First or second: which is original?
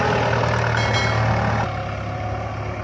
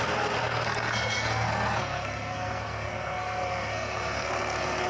first